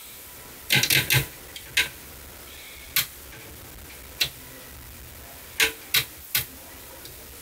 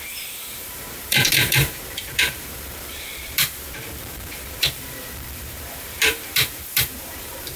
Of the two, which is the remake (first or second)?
second